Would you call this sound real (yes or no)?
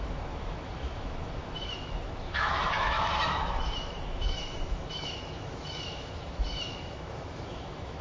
no